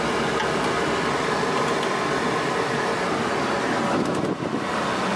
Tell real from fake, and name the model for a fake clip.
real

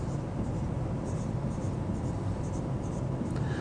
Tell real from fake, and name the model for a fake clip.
fake, vocoder, BigVGAN v2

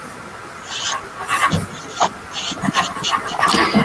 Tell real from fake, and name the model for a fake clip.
real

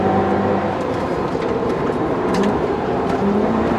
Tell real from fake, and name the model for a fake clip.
fake, vocoder, BigVGAN v2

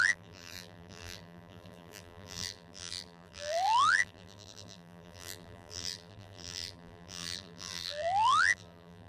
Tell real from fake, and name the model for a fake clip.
fake, vocoder, BigVGAN v2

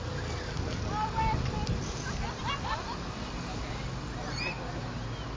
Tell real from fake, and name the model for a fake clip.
real